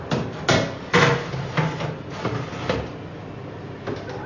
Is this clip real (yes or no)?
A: yes